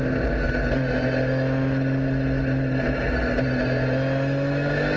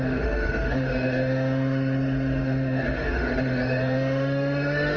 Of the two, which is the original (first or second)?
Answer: first